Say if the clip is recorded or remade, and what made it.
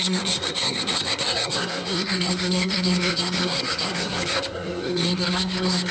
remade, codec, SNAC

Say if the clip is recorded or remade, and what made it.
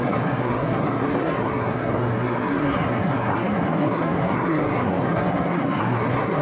remade, codec, SNAC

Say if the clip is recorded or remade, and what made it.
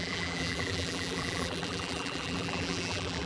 remade, vocoder, BigVGAN v2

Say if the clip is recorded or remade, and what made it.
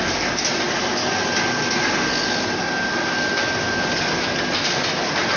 recorded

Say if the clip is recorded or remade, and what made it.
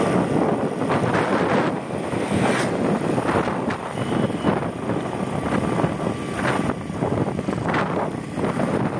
recorded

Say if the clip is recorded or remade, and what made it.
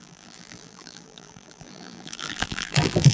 remade, vocoder, BigVGAN v2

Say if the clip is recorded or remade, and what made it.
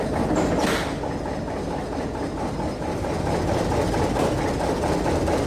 recorded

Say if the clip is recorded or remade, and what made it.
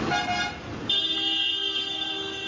recorded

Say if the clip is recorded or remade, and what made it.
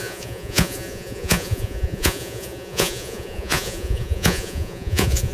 remade, vocoder, Vocos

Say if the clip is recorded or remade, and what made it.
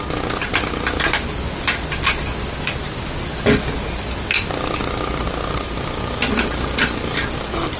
recorded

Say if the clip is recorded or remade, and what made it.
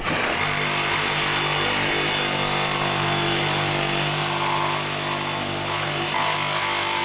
recorded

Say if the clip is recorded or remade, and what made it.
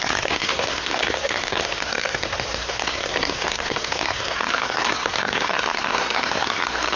remade, codec, SNAC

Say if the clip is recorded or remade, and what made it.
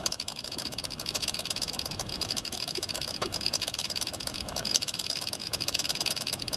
remade, autoencoder, DAC-VAE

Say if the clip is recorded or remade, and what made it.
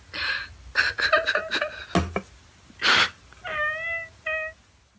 recorded